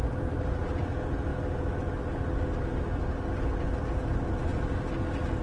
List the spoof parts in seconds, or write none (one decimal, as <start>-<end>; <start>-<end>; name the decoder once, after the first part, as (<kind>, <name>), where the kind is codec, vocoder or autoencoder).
none

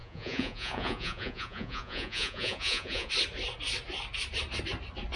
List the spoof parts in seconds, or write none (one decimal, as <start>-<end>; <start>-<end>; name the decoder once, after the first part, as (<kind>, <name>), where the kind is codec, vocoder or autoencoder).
0.0-3.1 (vocoder, Vocos)

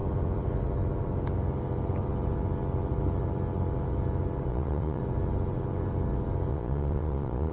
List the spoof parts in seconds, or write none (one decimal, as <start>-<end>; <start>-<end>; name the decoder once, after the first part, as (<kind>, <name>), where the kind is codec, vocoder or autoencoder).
4.5-5.0 (vocoder, Vocos); 6.5-7.5

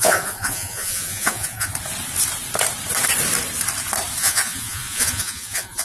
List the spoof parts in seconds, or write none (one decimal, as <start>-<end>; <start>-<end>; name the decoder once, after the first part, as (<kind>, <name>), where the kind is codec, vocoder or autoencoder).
0.0-1.7 (vocoder, Vocos); 4.2-5.8

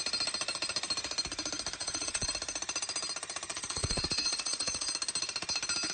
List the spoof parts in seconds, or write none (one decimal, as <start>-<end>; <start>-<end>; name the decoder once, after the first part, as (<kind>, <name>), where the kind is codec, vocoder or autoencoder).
1.8-2.3 (vocoder, Vocos); 3.5-4.9

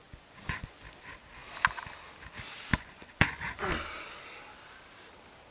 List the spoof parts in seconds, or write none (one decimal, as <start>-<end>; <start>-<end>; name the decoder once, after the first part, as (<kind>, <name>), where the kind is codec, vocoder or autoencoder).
0.0-0.8 (vocoder, Vocos); 2.7-3.6

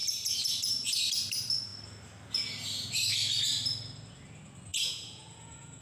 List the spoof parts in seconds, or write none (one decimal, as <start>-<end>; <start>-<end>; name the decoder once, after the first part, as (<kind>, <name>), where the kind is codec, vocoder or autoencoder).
4.7-5.8 (vocoder, Vocos)